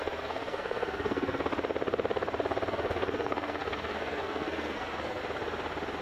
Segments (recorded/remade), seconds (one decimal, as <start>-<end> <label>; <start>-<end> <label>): 0.0-1.5 remade; 1.5-2.7 recorded; 2.7-5.2 remade; 5.2-6.0 recorded